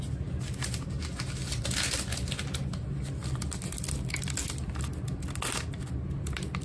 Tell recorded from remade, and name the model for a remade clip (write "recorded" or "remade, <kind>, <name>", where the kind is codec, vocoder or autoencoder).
recorded